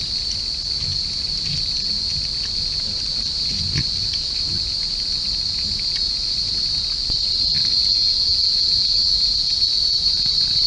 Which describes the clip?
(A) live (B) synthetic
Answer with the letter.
A